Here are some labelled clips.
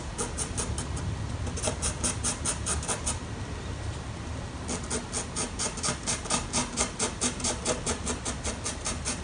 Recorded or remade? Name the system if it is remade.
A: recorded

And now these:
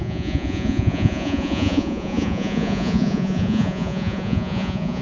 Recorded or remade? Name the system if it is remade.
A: remade, vocoder, Vocos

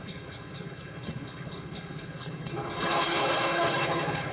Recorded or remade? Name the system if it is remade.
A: remade, codec, HILCodec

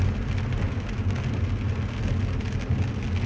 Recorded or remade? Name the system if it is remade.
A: recorded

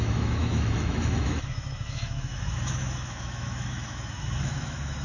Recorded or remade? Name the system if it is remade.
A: remade, autoencoder, DAC-VAE